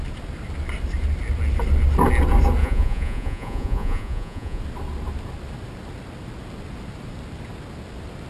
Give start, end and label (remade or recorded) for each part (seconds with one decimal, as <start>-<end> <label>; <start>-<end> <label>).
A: 0.0-2.6 recorded; 2.6-4.6 remade; 4.6-8.3 recorded